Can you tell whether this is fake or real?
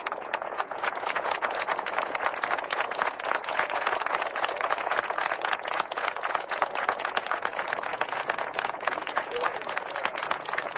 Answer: fake